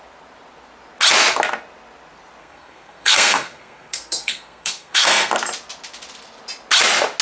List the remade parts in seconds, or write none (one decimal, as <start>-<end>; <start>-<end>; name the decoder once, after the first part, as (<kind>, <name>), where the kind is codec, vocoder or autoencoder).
2.4-5.3 (codec, SNAC)